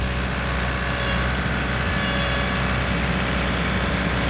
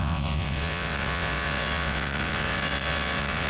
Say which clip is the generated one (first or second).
second